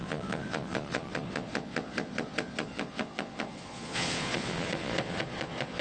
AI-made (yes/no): yes